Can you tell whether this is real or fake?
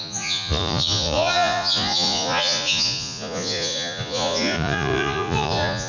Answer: fake